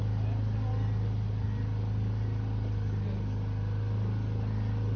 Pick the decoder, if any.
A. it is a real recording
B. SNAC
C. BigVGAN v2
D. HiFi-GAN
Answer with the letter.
A